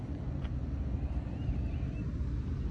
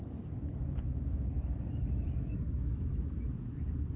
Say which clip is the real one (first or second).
first